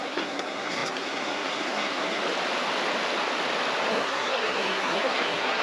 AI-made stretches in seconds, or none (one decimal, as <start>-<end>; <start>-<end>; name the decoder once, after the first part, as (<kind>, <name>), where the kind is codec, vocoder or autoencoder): 0.0-2.2 (codec, SNAC); 3.9-5.6